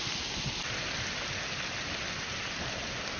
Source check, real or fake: real